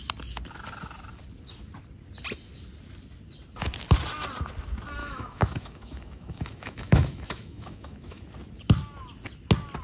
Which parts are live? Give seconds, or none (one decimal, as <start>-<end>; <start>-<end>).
0.0-5.0; 8.2-9.8